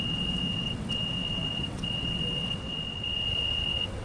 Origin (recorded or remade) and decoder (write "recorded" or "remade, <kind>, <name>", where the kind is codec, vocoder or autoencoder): remade, vocoder, WaveNeXt